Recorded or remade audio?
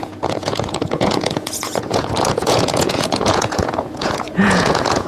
remade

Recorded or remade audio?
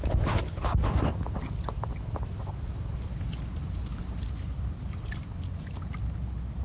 recorded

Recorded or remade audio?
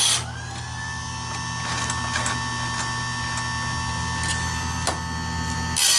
recorded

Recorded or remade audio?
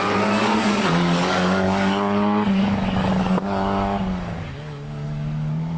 remade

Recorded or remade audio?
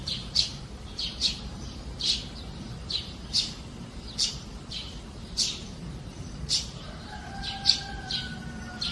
remade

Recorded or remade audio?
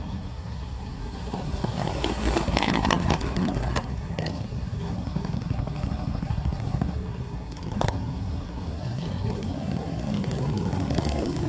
remade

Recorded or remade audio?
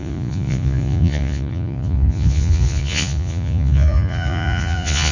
remade